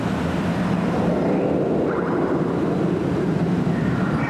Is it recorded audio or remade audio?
recorded